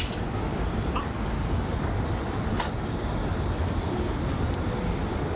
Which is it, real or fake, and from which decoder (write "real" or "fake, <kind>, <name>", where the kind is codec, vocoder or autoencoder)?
fake, vocoder, BigVGAN v2